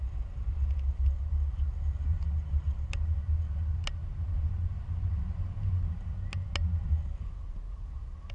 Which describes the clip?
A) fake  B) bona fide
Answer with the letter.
B